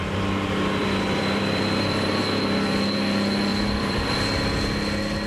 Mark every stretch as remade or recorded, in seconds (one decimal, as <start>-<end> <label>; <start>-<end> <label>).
0.0-0.8 recorded; 0.8-2.1 remade; 2.1-3.5 recorded; 3.5-4.1 remade; 4.1-5.3 recorded